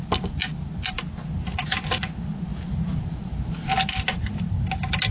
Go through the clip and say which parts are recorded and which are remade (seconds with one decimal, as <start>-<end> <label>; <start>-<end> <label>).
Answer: 0.0-5.1 recorded